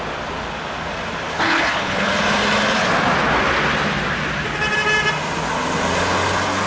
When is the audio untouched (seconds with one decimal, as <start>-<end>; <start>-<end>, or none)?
0.0-1.3; 2.1-6.7